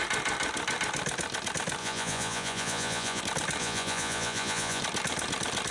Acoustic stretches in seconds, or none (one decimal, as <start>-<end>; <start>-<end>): 0.0-1.8; 3.2-3.6; 4.8-5.7